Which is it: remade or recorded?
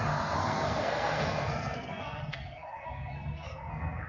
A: remade